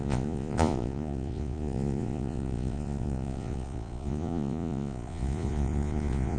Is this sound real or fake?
fake